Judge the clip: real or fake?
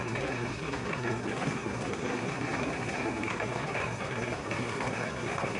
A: fake